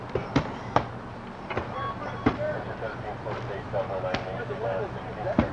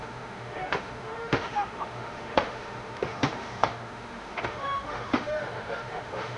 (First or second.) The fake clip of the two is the second